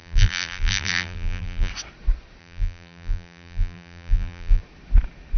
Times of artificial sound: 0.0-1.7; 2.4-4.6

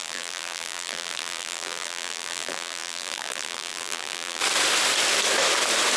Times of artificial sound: 0.0-4.4